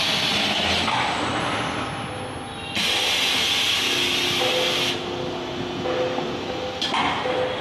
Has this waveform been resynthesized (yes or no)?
no